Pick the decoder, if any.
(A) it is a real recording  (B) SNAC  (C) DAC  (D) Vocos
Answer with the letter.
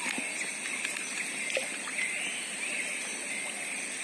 A